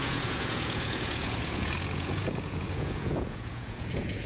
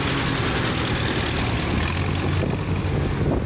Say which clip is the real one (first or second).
second